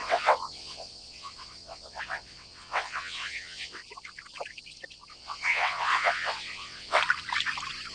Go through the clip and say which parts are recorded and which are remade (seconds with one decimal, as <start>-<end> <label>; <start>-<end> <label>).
0.0-3.8 remade; 3.8-5.1 recorded; 5.1-7.0 remade; 7.0-7.9 recorded